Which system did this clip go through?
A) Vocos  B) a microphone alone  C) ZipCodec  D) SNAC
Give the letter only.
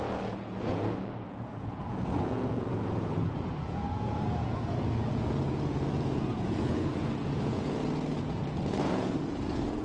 A